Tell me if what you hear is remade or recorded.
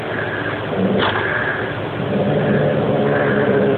recorded